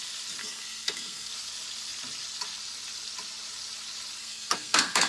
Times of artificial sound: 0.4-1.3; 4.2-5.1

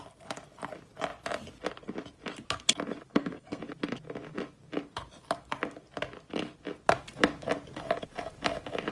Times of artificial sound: 3.1-3.6

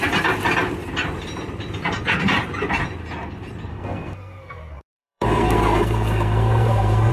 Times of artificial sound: 3.7-7.1